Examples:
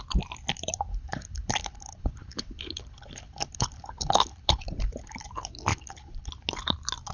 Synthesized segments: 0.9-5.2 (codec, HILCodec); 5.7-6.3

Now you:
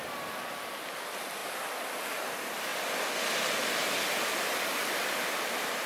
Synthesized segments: none